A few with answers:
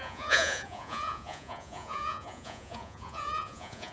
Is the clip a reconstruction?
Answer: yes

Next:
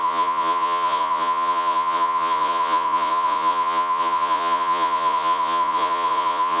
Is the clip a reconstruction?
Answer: yes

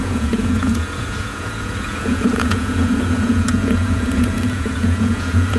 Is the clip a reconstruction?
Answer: yes